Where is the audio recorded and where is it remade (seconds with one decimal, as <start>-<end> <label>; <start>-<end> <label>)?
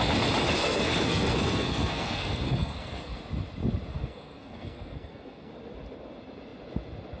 0.0-0.6 recorded; 0.6-3.2 remade; 3.2-3.9 recorded; 3.9-5.5 remade; 5.5-7.2 recorded